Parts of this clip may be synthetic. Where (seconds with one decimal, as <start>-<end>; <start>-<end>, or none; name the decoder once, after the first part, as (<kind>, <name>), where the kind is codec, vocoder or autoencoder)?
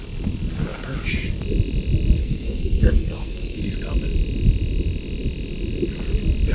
2.2-3.6 (codec, SNAC)